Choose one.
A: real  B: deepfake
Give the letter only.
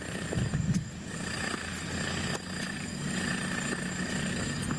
A